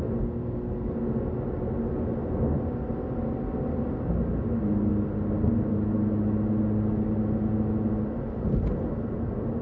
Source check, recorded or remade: recorded